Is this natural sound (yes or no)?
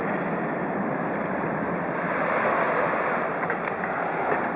no